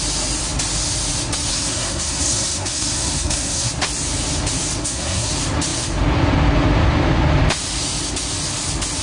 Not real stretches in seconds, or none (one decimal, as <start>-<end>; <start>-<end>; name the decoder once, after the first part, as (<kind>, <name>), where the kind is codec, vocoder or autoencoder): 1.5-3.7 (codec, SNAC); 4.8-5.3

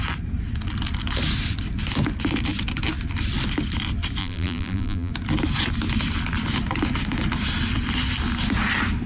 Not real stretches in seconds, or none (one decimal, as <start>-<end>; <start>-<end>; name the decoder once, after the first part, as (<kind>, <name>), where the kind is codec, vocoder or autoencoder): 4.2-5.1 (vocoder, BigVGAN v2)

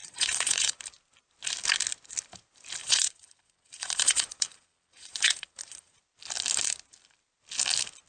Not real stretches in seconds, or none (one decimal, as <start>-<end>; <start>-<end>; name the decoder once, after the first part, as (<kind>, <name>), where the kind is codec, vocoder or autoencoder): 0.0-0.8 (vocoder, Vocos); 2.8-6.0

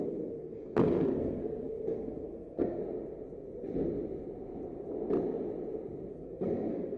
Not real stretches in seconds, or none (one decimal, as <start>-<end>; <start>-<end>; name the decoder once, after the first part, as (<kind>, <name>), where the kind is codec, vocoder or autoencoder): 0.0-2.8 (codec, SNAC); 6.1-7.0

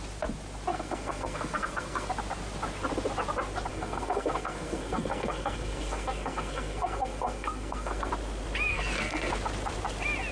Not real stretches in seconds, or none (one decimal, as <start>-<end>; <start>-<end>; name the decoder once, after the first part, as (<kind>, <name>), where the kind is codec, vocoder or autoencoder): 0.7-2.1 (codec, SNAC); 3.7-8.1; 8.7-9.3

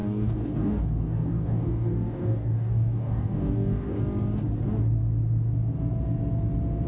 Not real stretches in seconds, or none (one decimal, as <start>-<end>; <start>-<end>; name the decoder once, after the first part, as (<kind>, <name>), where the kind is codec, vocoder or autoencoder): 0.0-4.0 (codec, DAC)

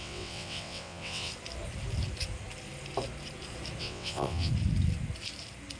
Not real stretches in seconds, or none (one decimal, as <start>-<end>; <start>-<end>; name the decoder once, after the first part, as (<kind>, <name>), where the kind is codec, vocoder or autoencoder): 0.0-1.3 (vocoder, WaveNeXt); 3.8-4.5

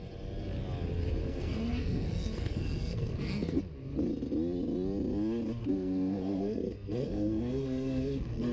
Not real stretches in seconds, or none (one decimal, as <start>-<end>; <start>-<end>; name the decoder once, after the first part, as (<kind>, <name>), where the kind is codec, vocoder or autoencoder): 1.2-3.6 (codec, SNAC); 5.6-8.5